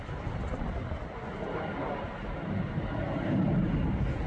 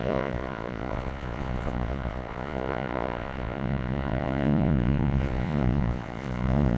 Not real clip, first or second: second